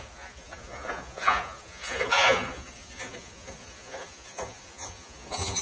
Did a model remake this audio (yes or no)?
yes